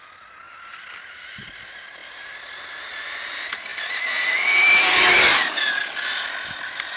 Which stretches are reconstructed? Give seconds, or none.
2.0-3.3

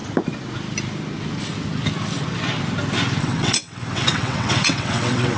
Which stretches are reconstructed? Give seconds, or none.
3.2-5.4

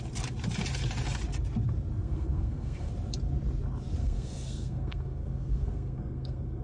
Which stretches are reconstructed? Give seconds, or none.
2.0-2.9; 4.0-6.6

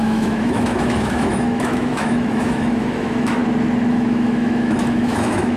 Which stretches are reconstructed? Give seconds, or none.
0.0-3.4; 3.9-5.6

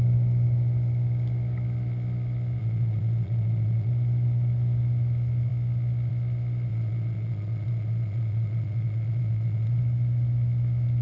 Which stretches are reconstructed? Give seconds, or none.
2.6-3.9; 6.7-9.8